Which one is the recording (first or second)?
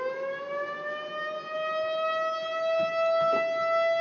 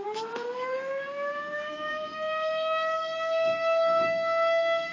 first